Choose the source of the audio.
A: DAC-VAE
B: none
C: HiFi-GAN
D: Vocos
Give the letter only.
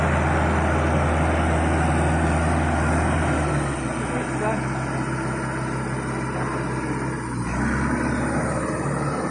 B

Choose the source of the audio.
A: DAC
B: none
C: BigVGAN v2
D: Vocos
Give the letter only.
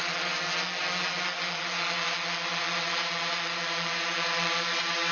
B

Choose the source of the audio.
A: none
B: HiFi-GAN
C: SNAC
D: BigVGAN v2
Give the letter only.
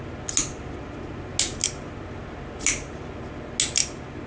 A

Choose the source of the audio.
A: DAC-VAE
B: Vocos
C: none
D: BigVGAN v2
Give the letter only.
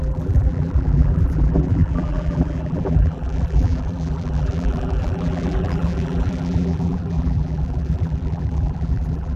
D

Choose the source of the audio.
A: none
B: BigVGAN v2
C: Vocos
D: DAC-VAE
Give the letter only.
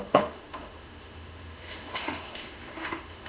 D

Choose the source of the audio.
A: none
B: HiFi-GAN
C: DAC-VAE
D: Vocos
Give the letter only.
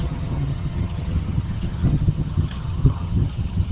B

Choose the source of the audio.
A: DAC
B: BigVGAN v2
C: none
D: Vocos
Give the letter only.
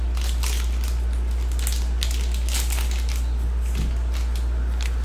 C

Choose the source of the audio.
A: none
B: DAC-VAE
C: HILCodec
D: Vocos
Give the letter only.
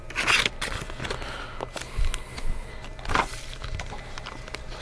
A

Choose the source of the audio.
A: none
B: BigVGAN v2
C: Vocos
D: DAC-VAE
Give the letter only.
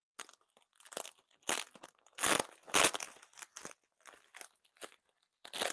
A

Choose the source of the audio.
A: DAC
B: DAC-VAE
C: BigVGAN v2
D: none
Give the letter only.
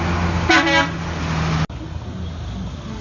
D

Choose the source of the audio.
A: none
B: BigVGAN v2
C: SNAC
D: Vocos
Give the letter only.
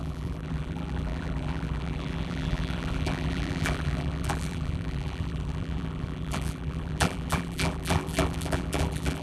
B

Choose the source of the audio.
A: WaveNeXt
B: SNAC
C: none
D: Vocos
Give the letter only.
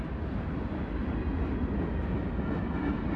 C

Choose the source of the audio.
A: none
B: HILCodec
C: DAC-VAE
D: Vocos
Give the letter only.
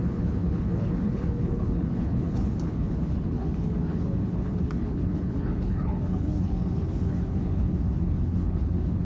B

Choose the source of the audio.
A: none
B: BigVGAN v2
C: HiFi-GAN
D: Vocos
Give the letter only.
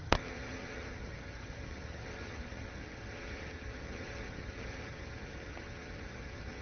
C